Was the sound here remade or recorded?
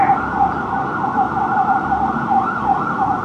recorded